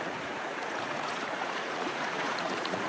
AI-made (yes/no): yes